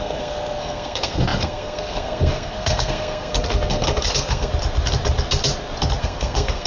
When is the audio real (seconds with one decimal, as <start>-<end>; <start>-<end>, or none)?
4.5-6.0